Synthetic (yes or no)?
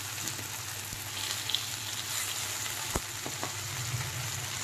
no